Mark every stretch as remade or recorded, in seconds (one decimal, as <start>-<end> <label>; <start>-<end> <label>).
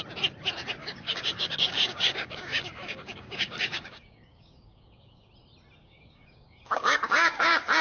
0.0-0.8 recorded; 0.8-5.3 remade; 5.3-5.8 recorded; 5.8-7.8 remade